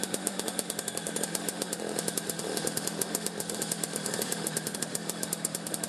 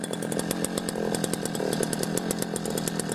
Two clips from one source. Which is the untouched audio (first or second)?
second